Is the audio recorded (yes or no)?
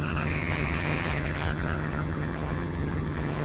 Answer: no